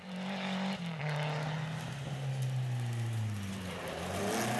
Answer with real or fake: real